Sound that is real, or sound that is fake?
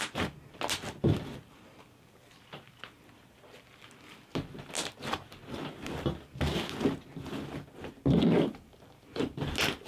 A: real